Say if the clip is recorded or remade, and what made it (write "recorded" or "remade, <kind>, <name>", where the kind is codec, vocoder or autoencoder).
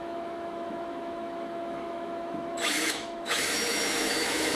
remade, autoencoder, DAC-VAE